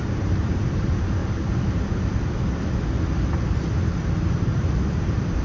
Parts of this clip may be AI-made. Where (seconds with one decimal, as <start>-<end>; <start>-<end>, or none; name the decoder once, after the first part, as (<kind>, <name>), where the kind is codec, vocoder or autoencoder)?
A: 0.0-1.2 (vocoder, BigVGAN v2); 4.4-5.4